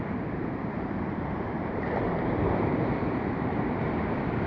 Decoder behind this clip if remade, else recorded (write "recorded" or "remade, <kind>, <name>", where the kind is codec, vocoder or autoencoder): remade, vocoder, BigVGAN v2